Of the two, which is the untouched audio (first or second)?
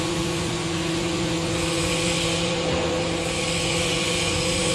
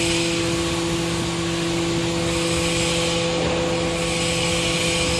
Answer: second